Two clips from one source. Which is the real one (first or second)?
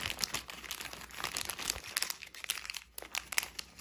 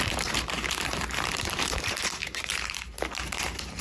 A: first